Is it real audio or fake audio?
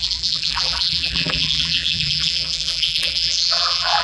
fake